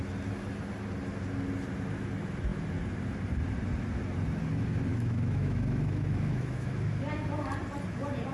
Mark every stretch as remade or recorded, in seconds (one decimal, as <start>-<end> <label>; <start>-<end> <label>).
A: 0.0-4.9 recorded; 4.9-6.9 remade; 6.9-8.3 recorded